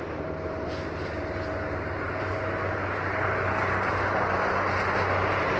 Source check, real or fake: real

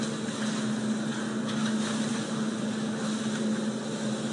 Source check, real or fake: real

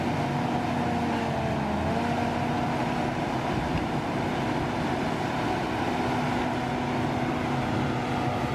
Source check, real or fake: real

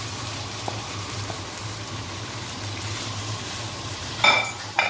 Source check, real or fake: fake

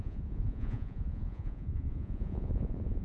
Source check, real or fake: fake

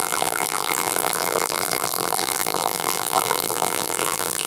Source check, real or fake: fake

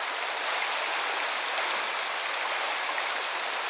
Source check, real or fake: real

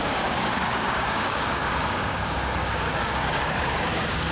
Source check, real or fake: fake